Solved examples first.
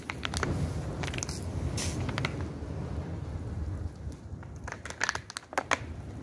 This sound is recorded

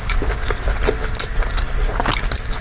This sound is recorded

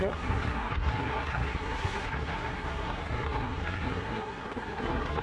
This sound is remade